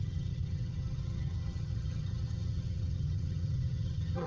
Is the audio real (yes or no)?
no